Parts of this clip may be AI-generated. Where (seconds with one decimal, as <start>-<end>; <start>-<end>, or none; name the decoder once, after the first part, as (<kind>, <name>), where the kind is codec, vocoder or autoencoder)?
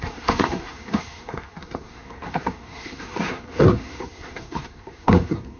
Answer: 0.0-5.6 (codec, SNAC)